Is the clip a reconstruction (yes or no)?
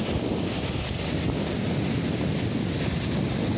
no